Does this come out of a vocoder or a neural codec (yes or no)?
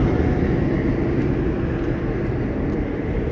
no